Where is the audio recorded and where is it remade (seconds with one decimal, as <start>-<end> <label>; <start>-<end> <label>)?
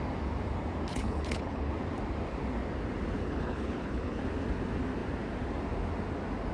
0.0-0.9 recorded; 0.9-1.7 remade; 1.7-3.2 recorded; 3.2-4.2 remade; 4.2-6.5 recorded